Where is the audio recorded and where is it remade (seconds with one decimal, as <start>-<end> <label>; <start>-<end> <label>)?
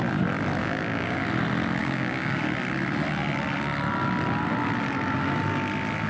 0.0-0.6 recorded; 0.6-1.2 remade; 1.2-1.8 recorded; 1.8-2.4 remade; 2.4-6.1 recorded